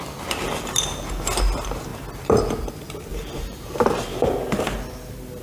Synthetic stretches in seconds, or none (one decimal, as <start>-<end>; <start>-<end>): 3.1-3.9